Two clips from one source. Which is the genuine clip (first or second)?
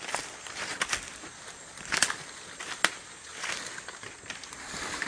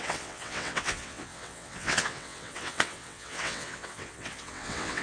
first